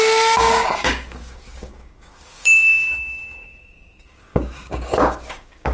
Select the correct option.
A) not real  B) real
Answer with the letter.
A